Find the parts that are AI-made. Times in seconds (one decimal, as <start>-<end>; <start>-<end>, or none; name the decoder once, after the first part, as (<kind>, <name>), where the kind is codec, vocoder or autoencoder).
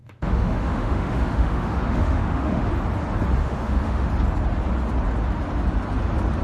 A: 0.0-2.7 (autoencoder, DAC-VAE); 3.4-4.1